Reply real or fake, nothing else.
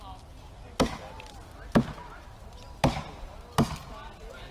real